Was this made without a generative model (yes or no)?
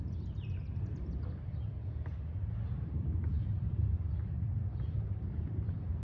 no